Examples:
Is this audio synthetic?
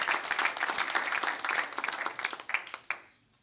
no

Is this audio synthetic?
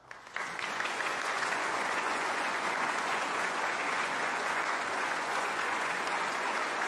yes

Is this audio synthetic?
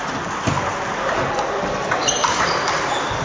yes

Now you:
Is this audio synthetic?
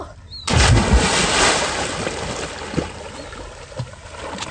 no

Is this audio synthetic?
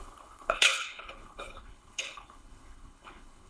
yes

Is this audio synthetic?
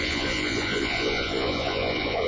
yes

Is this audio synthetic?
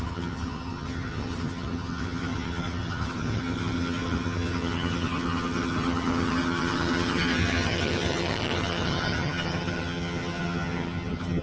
yes